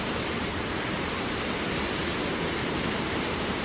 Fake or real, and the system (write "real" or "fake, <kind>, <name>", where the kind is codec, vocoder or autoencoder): fake, vocoder, BigVGAN v2